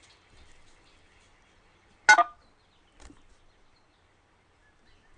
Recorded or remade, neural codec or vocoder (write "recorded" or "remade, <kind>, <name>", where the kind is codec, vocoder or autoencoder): recorded